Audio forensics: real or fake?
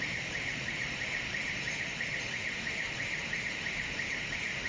real